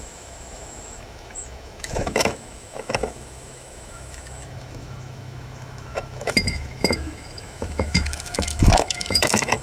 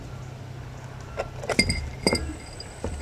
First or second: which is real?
second